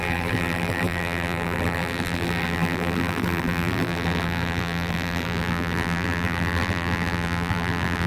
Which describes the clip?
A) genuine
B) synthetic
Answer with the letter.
B